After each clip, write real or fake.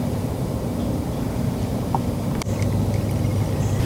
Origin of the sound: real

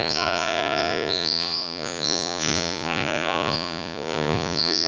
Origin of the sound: fake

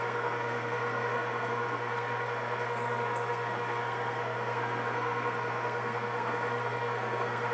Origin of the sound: fake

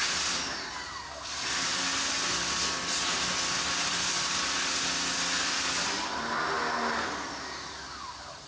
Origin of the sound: real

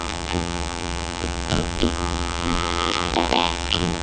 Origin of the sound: fake